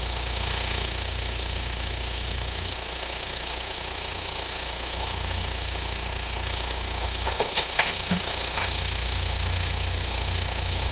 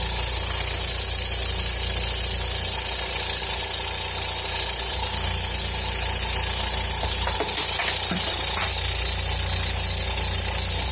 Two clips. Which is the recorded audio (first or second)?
second